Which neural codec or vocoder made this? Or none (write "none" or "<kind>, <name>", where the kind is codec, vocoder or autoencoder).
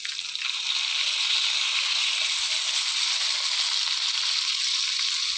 none